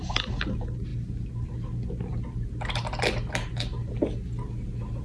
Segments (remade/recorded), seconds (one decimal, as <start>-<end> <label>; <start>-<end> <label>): 0.0-5.0 recorded